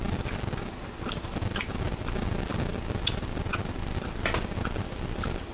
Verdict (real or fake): real